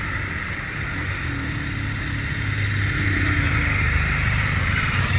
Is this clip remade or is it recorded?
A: recorded